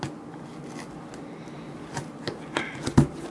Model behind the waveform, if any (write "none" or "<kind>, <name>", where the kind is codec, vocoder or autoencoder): none